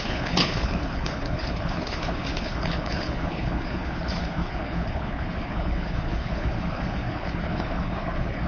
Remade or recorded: remade